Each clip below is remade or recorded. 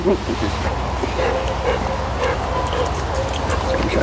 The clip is recorded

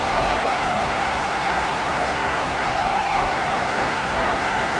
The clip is remade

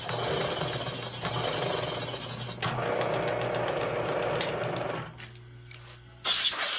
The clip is recorded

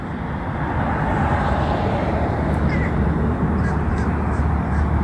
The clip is recorded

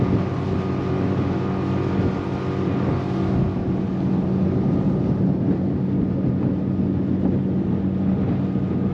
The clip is recorded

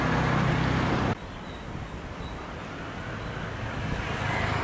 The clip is recorded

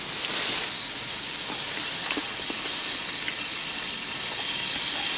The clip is recorded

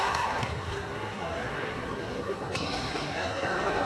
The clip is remade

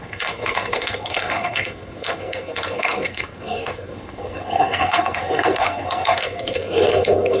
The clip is remade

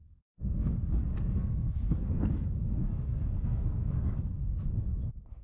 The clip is remade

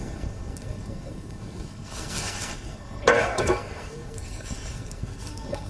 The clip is remade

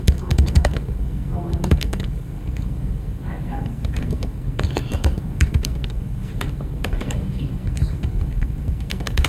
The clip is remade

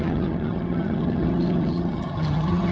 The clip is remade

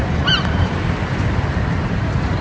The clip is remade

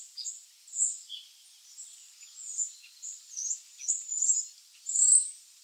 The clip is recorded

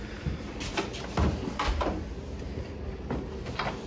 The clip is recorded